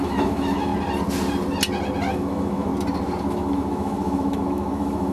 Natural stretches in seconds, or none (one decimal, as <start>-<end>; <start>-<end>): 0.7-2.1; 2.7-3.2